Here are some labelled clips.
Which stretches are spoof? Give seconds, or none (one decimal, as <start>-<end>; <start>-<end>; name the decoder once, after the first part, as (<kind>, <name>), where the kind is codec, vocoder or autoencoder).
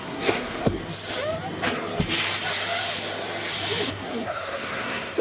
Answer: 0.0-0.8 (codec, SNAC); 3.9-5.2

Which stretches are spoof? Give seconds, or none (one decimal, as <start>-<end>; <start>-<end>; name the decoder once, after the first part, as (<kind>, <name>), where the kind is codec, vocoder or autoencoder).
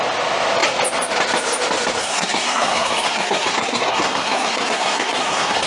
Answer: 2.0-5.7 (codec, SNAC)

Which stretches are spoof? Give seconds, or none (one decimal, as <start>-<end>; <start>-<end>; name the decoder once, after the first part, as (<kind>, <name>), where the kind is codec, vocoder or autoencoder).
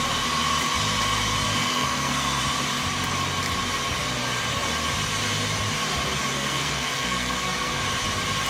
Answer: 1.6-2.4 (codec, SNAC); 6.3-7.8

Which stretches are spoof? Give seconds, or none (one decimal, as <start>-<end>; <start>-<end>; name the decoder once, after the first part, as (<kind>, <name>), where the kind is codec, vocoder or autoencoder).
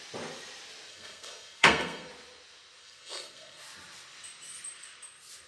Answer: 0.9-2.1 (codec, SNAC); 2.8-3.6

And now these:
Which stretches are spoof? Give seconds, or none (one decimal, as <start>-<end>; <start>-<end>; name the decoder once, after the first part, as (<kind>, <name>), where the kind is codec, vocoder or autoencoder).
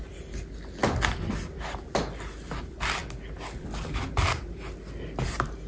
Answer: none